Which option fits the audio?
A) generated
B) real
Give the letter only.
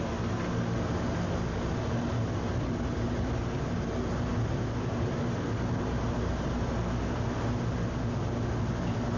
B